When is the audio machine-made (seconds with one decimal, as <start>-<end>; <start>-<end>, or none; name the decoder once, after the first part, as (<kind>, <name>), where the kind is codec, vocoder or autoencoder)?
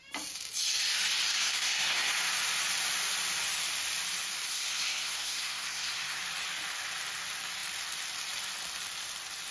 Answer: 1.3-2.1 (codec, SNAC); 4.5-6.2